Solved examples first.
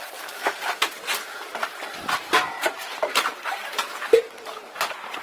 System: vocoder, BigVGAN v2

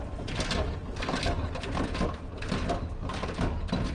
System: none